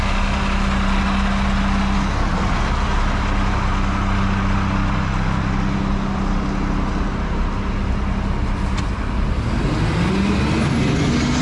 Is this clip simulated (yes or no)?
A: no